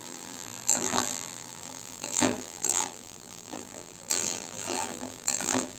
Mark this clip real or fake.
fake